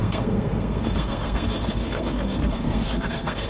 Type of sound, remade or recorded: remade